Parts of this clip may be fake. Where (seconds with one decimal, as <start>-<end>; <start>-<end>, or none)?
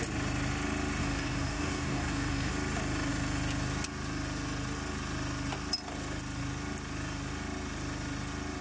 1.0-2.5